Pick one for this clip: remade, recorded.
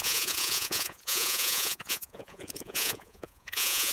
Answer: remade